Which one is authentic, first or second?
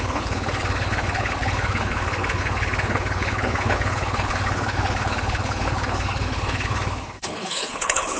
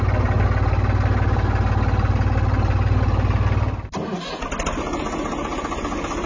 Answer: second